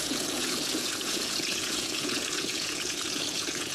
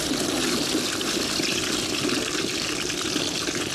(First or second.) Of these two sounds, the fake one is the first